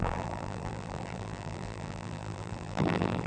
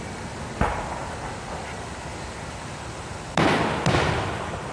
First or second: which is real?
second